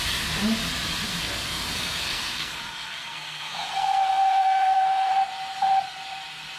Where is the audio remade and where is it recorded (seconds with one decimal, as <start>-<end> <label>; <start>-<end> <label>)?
0.0-1.1 recorded; 1.1-5.1 remade; 5.1-6.6 recorded